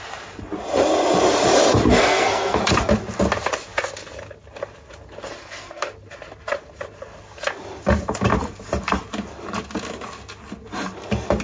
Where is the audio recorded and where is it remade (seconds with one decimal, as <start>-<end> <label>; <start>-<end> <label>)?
0.0-2.0 recorded; 2.0-2.6 remade; 2.6-5.4 recorded; 5.4-5.9 remade; 5.9-11.4 recorded

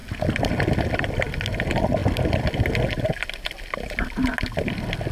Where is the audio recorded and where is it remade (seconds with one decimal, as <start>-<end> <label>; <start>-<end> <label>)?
0.0-5.1 recorded

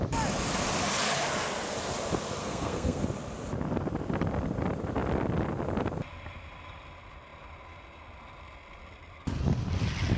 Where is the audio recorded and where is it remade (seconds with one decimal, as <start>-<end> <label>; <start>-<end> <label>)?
0.0-2.4 recorded; 2.4-3.0 remade; 3.0-10.2 recorded

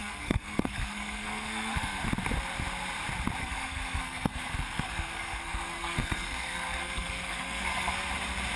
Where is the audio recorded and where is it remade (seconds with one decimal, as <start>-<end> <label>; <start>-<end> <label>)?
0.0-2.0 remade; 2.0-3.4 recorded; 3.4-8.1 remade; 8.1-8.6 recorded

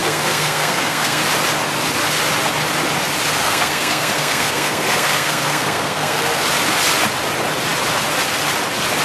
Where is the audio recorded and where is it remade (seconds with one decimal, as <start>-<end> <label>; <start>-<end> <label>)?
0.0-1.2 remade; 1.2-3.4 recorded; 3.4-6.5 remade; 6.5-9.0 recorded

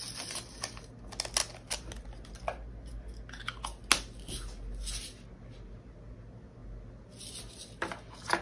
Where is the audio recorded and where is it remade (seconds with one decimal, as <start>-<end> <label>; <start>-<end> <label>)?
0.0-8.4 recorded